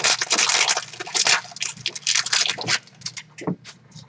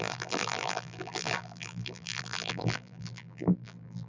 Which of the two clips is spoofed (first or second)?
second